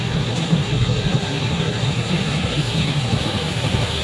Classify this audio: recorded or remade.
remade